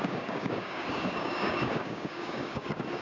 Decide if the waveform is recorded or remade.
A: remade